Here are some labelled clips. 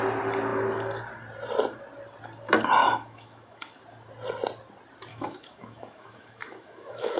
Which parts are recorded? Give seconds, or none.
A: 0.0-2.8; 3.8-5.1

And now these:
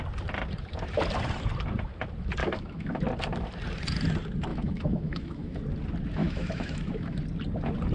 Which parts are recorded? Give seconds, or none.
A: 0.0-2.4; 3.0-4.5; 5.6-6.2; 7.2-7.9

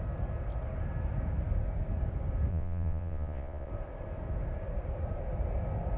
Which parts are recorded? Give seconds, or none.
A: 0.0-2.5; 3.7-6.0

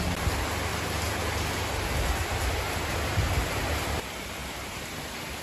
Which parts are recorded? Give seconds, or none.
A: 0.0-5.4

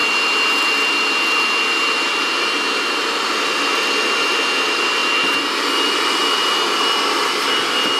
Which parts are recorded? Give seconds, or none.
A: 0.0-8.0

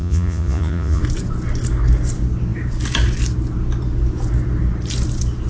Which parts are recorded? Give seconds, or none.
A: 1.0-5.5

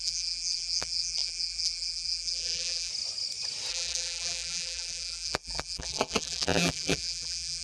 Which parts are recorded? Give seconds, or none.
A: 2.9-3.7